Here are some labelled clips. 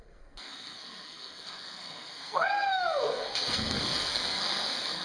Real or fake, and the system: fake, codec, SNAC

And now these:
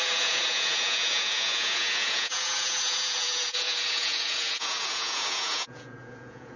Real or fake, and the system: fake, vocoder, Vocos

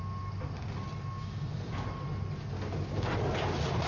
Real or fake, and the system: real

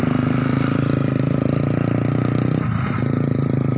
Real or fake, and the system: real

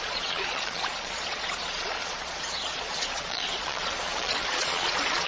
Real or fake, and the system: fake, vocoder, Vocos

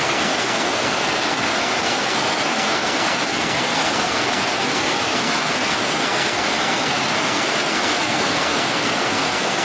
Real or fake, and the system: fake, codec, SNAC